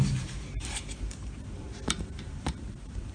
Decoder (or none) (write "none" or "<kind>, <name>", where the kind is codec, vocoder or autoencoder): vocoder, BigVGAN v2